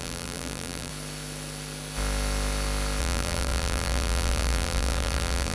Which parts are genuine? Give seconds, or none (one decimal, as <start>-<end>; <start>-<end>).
0.9-3.0